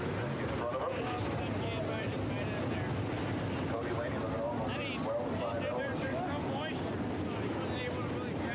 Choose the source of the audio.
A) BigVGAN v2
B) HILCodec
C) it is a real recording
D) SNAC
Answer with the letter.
C